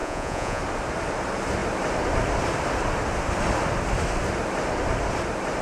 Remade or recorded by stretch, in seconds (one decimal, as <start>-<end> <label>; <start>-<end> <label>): 0.0-0.6 remade; 0.6-5.6 recorded